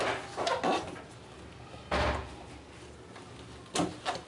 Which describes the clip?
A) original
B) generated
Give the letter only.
A